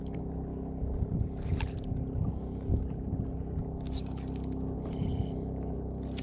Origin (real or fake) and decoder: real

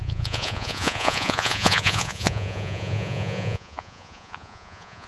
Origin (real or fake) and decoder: fake, vocoder, Vocos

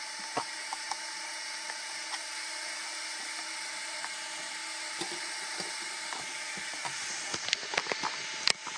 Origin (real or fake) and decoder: real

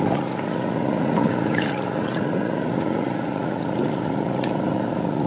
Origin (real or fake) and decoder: fake, vocoder, Vocos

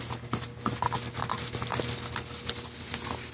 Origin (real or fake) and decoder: real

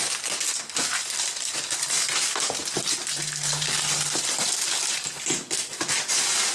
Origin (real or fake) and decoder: real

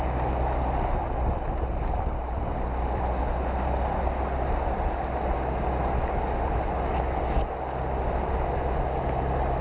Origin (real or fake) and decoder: real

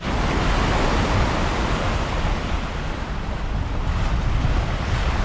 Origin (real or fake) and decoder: real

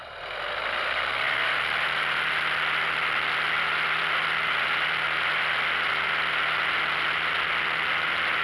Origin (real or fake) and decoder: real